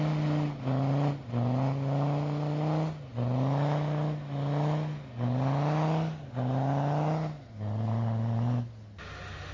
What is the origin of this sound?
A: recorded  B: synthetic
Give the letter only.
A